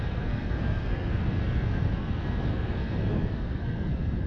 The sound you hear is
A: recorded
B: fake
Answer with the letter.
B